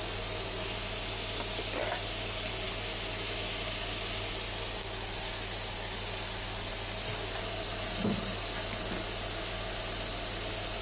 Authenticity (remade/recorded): recorded